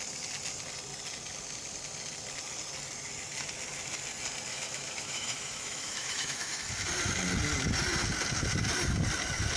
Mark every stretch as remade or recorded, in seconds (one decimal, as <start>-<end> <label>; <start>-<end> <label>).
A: 0.0-4.5 recorded; 4.5-6.6 remade; 6.6-9.6 recorded

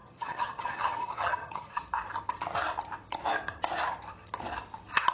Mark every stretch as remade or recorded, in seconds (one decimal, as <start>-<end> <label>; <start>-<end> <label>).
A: 0.0-1.8 remade; 1.8-5.1 recorded

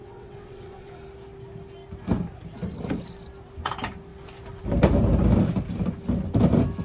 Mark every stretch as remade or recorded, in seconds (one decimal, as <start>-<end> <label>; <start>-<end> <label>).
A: 0.0-0.9 remade; 0.9-6.8 recorded

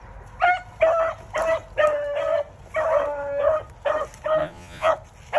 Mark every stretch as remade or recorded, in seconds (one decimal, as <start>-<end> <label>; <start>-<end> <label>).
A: 0.0-4.4 recorded; 4.4-4.9 remade; 4.9-5.4 recorded

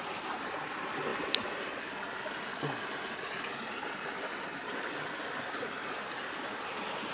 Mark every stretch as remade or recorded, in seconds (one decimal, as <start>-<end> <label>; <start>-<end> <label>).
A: 0.0-7.1 recorded

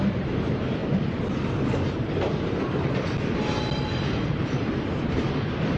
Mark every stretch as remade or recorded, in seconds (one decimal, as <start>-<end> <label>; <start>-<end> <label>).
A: 0.0-0.8 remade; 0.8-4.3 recorded; 4.3-5.8 remade

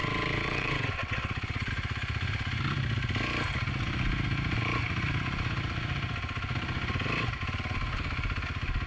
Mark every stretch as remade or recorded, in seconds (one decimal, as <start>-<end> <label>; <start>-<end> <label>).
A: 0.0-1.7 remade; 1.7-8.9 recorded